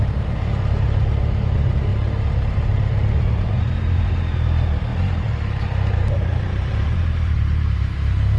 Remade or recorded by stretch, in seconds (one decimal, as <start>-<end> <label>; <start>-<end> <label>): 0.0-1.9 remade; 1.9-2.5 recorded; 2.5-4.9 remade; 4.9-5.9 recorded; 5.9-8.4 remade